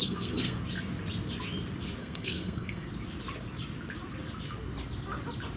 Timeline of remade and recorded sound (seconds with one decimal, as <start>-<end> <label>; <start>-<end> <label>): 0.0-0.6 remade; 0.6-2.0 recorded; 2.0-2.9 remade; 2.9-5.6 recorded